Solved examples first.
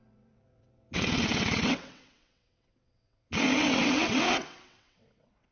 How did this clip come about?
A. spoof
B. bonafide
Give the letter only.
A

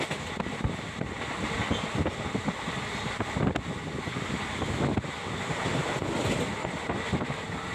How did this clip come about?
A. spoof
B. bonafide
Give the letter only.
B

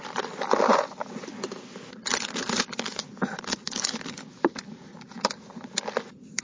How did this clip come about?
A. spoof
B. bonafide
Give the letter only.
B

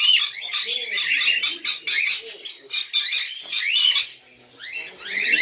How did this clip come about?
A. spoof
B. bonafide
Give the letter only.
B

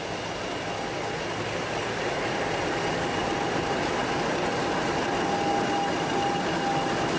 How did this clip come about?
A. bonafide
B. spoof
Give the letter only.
A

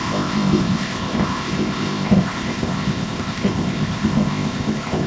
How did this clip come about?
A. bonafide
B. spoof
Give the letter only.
B